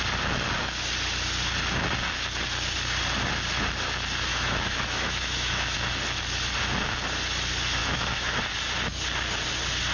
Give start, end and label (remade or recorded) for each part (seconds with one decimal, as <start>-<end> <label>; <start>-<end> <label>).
0.0-4.3 recorded; 4.3-5.9 remade; 5.9-7.8 recorded; 7.8-8.4 remade; 8.4-9.9 recorded